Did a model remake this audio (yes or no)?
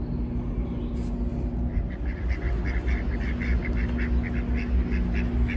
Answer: no